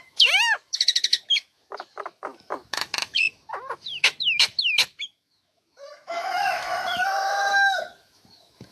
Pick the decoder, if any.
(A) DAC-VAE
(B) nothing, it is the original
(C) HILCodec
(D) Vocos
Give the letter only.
A